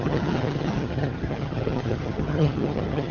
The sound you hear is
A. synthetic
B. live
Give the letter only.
A